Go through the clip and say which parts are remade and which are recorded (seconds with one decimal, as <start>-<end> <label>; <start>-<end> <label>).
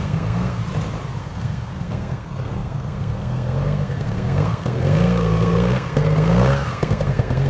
0.0-0.6 remade; 0.6-1.2 recorded; 1.2-7.5 remade